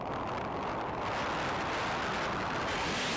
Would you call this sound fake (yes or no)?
no